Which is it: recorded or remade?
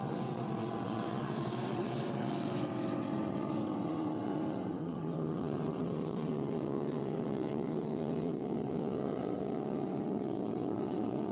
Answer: remade